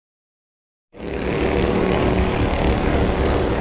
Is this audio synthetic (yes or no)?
yes